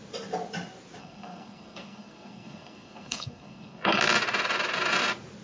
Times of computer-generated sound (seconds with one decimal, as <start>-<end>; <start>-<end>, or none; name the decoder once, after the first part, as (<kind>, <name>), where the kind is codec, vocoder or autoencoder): 1.0-4.0 (codec, SNAC)

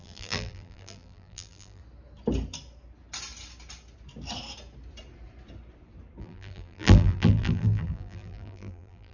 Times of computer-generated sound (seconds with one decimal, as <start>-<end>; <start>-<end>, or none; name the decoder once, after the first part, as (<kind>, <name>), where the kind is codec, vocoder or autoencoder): 0.0-1.8 (vocoder, BigVGAN v2); 6.2-9.1

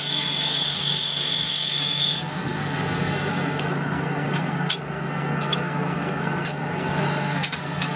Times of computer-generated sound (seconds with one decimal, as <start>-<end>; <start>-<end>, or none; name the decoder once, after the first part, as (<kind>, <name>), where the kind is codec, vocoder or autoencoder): 0.0-8.0 (codec, SNAC)

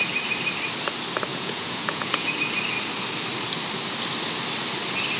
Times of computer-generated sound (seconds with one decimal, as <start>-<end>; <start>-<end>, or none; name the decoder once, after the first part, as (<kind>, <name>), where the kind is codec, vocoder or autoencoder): 1.3-2.3 (vocoder, Vocos)